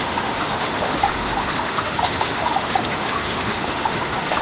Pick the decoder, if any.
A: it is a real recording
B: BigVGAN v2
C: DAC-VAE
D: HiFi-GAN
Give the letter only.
C